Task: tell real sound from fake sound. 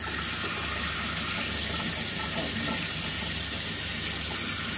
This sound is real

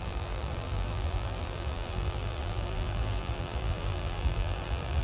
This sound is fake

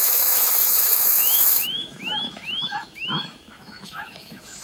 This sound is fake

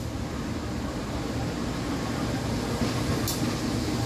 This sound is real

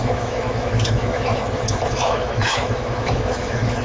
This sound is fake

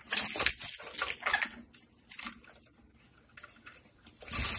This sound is real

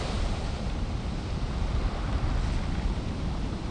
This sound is fake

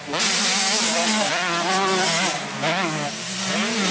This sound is real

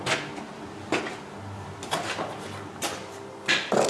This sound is real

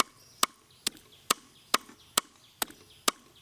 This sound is real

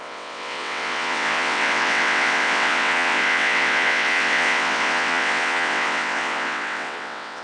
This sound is fake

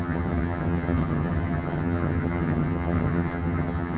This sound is fake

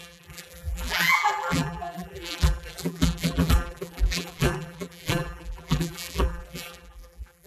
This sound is fake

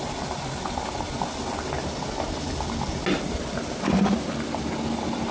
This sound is real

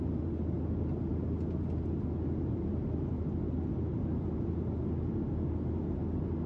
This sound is real